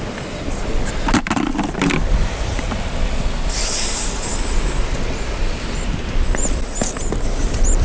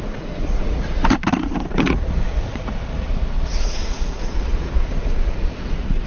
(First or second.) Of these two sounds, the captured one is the first